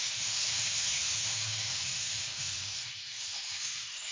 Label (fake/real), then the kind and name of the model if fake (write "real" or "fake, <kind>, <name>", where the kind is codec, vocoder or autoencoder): fake, autoencoder, DAC-VAE